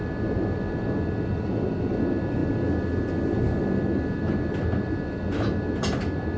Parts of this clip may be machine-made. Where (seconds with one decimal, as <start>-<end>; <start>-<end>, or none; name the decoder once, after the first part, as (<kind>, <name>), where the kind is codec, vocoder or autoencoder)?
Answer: none